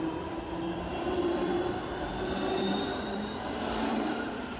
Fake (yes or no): yes